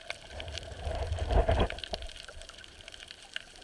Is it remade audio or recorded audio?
remade